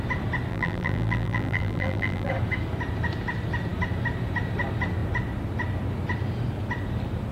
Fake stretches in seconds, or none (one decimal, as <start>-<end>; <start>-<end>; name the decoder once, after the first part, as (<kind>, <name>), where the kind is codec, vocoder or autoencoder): 0.5-2.3 (vocoder, BigVGAN v2)